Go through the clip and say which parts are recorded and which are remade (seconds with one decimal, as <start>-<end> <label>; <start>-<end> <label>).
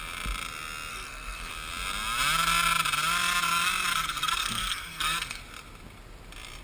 0.0-0.9 recorded; 0.9-1.5 remade; 1.5-3.9 recorded; 3.9-5.4 remade; 5.4-6.6 recorded